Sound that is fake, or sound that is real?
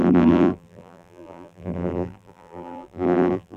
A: fake